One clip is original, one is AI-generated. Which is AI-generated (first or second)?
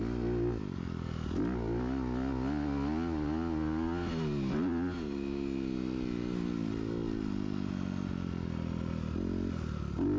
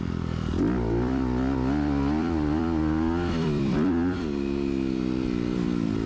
second